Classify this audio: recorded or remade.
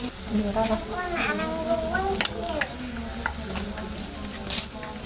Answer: recorded